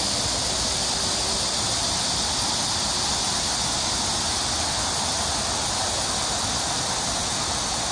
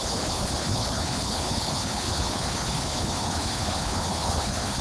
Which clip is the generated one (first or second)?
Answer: second